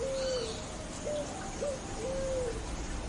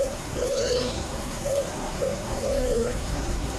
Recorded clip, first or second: first